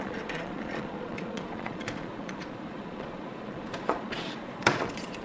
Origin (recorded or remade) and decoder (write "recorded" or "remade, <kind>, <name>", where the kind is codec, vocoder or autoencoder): remade, vocoder, Vocos